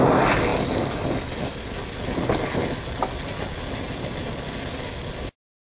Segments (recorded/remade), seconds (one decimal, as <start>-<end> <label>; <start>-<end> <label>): 0.0-5.7 recorded